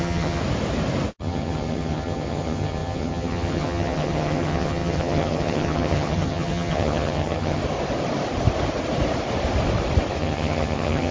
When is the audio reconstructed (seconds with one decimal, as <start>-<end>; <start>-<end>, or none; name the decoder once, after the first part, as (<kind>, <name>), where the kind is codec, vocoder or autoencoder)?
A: 0.0-0.4 (vocoder, HiFi-GAN); 1.2-7.6; 10.2-11.1